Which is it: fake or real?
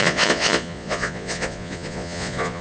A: fake